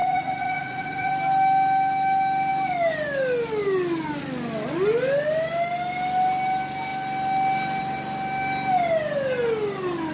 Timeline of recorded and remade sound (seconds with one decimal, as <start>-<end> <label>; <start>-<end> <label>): 0.0-1.1 remade; 1.1-10.1 recorded